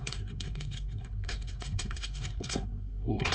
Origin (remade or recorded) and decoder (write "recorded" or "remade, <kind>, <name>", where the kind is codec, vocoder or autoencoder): remade, codec, SNAC